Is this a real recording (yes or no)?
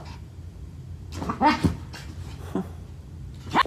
yes